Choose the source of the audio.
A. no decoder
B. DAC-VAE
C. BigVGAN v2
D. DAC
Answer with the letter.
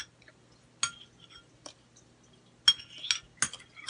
A